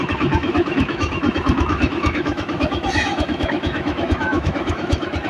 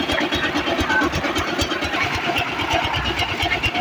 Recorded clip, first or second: second